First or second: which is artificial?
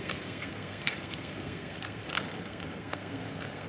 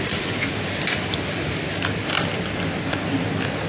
first